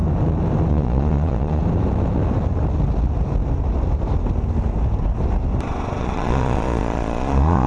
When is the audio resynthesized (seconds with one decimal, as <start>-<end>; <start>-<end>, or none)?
0.7-1.6; 6.0-7.7